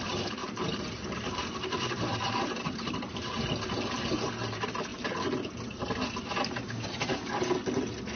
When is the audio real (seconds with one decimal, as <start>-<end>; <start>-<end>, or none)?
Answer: 0.0-0.4; 4.3-4.9; 5.8-8.2